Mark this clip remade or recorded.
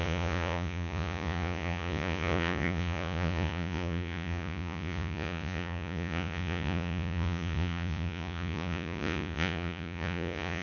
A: remade